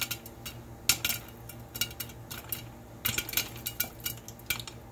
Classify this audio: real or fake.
real